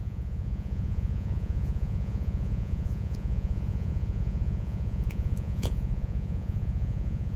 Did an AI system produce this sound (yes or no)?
yes